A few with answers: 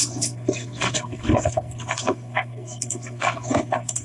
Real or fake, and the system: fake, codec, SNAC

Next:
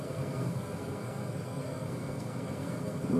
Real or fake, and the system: fake, codec, SNAC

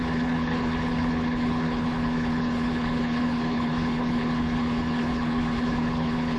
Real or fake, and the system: fake, codec, HILCodec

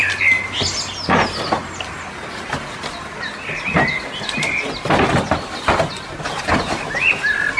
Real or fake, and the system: real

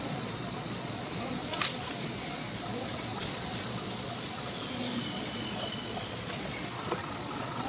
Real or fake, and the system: fake, vocoder, Vocos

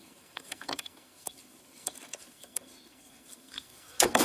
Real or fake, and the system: fake, codec, SNAC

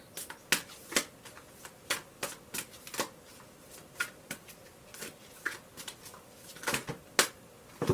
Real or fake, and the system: real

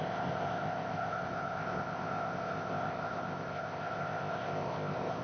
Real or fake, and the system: fake, codec, ZipCodec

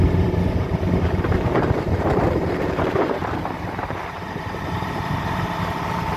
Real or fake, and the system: fake, vocoder, BigVGAN v2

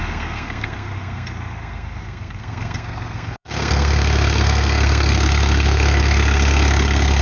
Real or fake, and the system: fake, codec, SNAC